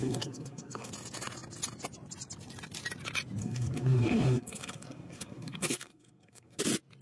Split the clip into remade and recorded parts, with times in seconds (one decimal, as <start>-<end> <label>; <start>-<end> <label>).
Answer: 0.0-0.9 remade; 0.9-3.4 recorded; 3.4-6.6 remade; 6.6-7.0 recorded